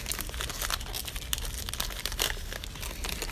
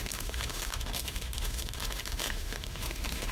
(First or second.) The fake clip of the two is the second